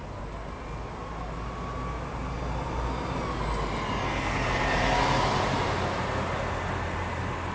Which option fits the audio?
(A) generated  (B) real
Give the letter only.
B